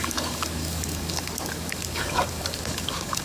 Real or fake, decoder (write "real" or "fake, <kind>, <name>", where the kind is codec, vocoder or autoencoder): fake, codec, DAC